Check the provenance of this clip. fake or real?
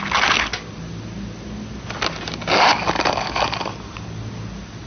real